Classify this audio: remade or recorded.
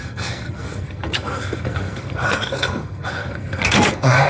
remade